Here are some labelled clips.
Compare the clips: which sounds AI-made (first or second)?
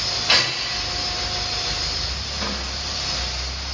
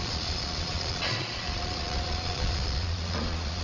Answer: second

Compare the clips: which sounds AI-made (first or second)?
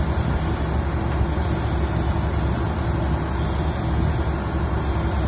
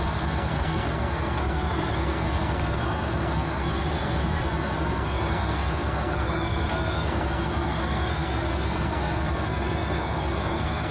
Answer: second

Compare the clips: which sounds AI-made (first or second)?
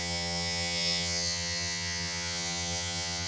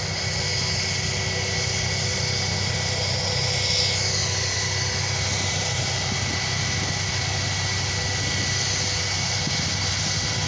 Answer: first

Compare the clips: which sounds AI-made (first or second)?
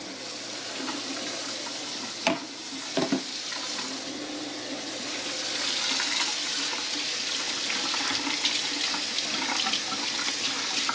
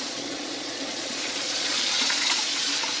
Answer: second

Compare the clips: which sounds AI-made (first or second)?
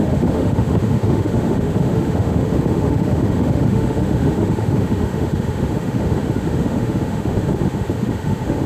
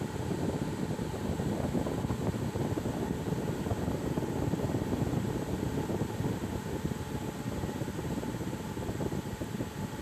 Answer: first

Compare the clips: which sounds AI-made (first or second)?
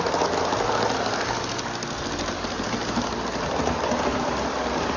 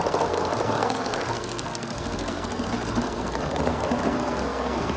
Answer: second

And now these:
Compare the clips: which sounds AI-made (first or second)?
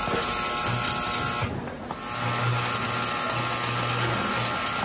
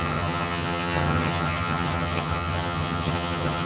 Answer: second